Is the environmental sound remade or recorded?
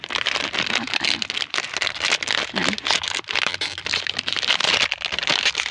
recorded